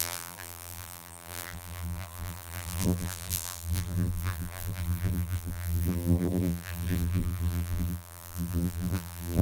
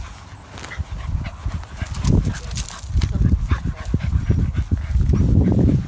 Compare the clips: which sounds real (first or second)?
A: second